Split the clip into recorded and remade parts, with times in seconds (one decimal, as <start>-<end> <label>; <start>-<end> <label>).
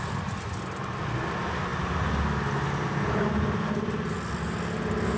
0.0-5.2 recorded